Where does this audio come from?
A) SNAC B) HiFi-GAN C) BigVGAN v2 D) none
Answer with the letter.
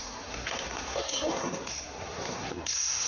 A